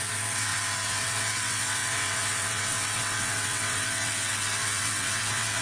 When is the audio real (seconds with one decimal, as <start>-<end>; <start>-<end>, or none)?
none